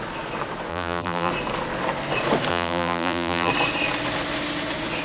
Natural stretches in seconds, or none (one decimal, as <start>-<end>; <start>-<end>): 0.0-0.7; 1.3-2.5; 3.5-5.0